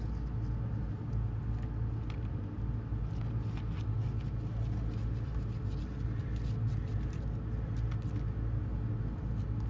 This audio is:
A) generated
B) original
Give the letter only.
B